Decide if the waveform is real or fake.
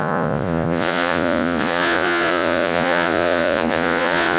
fake